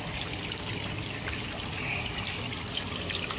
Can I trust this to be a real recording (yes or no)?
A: yes